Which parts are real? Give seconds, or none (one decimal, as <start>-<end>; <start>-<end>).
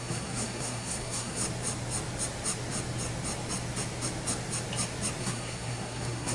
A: 1.4-5.2